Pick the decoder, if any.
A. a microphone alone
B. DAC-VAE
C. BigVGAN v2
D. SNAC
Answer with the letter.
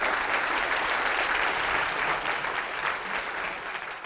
A